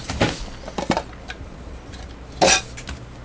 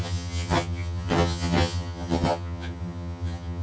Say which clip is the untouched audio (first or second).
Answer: first